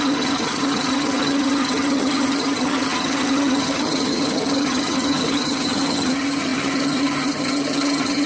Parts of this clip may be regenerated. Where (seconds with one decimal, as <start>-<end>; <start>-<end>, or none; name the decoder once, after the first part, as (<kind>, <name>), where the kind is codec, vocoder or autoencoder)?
0.0-8.3 (vocoder, HiFi-GAN)